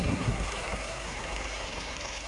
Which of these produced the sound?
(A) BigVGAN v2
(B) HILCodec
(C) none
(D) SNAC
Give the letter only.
D